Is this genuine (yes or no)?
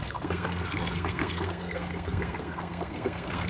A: no